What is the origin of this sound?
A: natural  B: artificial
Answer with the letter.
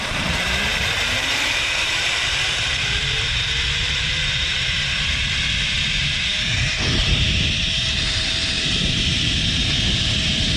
B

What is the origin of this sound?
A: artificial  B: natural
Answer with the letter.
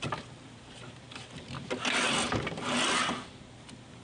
B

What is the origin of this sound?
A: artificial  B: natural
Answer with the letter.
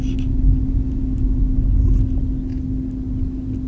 B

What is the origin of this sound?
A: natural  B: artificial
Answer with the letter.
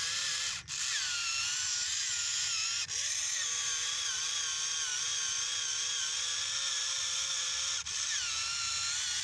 A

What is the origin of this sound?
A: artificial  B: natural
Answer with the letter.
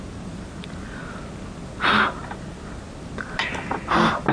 B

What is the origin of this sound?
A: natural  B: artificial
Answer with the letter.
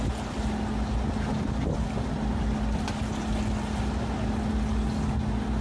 A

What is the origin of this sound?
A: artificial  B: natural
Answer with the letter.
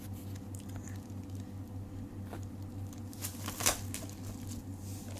B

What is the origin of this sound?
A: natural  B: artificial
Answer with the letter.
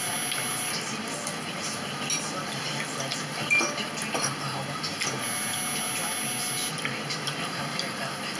A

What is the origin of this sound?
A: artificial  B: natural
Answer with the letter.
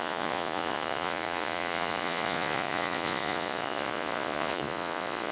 A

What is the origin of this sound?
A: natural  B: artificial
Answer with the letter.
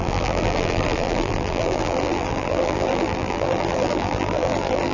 B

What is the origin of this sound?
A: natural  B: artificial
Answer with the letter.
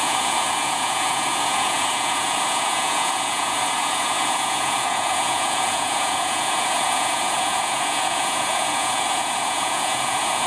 B